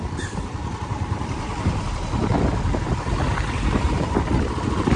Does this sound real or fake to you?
fake